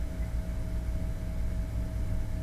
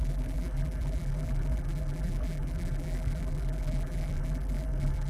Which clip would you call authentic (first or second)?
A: first